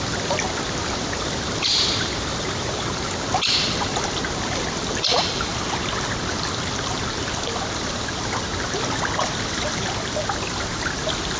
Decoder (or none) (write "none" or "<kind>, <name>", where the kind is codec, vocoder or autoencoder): none